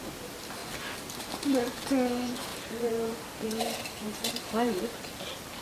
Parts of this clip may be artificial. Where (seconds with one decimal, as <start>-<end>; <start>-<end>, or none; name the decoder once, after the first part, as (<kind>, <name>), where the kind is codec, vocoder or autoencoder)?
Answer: 2.5-5.6 (vocoder, BigVGAN v2)